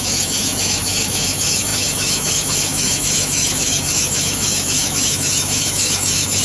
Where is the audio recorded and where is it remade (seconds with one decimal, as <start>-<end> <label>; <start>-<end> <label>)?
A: 0.0-6.4 remade